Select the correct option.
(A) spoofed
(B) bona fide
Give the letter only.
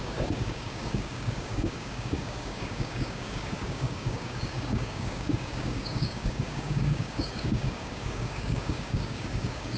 A